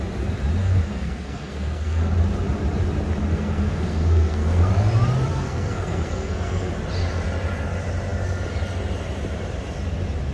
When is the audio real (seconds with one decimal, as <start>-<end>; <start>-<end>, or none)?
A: 0.0-0.6; 2.1-3.3; 4.7-5.3; 6.7-10.3

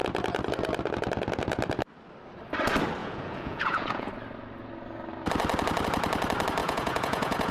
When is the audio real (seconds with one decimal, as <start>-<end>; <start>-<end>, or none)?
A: 0.0-3.0; 4.1-6.6